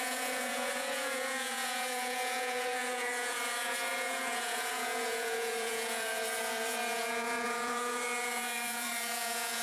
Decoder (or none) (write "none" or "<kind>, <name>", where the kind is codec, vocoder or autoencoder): vocoder, Vocos